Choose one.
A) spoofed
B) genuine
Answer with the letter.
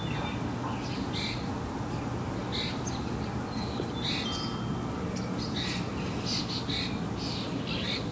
B